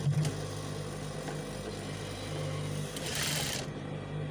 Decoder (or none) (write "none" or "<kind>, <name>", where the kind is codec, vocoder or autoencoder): none